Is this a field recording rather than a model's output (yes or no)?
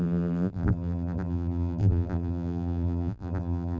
no